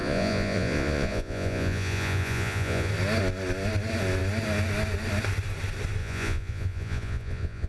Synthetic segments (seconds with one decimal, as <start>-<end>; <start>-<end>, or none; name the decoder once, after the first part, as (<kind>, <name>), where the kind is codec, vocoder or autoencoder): 0.0-2.9 (vocoder, Vocos); 6.0-7.7